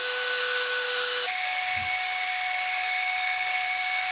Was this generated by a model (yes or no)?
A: yes